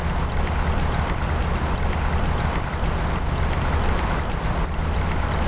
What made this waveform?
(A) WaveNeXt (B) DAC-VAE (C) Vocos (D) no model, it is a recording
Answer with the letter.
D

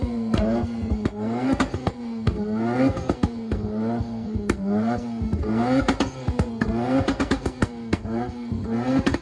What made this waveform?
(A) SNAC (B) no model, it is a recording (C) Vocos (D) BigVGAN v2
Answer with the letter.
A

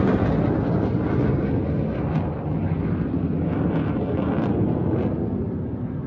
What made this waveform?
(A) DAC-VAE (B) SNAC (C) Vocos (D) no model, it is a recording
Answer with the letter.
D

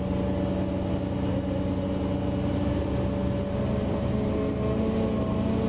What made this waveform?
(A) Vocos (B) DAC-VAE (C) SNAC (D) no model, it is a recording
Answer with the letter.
D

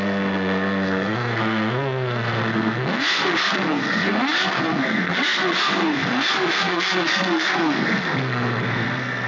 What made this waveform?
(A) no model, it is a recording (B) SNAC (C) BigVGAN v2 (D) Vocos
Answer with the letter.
B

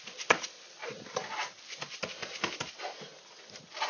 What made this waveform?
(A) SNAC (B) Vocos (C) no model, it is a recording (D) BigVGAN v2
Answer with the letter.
C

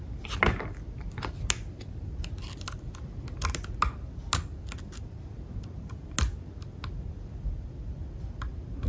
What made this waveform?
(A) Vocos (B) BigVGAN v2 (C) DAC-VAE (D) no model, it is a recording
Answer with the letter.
D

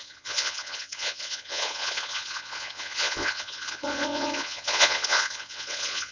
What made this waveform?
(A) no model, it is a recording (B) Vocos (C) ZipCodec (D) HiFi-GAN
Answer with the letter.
B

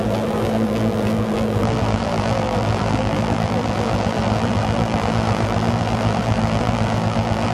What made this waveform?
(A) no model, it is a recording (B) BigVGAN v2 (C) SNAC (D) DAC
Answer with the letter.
B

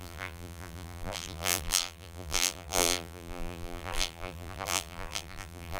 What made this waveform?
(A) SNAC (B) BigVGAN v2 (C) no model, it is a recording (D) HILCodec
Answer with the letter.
B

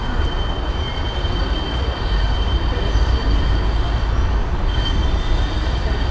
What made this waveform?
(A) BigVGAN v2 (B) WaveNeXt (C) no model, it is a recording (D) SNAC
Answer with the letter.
C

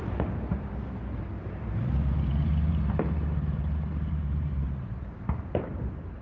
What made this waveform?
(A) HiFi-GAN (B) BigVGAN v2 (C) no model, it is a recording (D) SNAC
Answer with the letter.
B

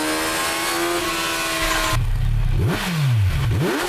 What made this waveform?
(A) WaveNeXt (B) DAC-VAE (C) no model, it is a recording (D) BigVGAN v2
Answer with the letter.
C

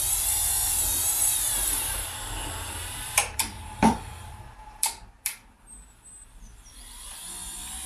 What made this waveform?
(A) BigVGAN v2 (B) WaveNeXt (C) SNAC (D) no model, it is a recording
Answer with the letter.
A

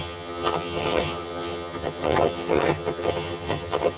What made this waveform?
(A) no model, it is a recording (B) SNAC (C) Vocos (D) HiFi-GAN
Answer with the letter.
D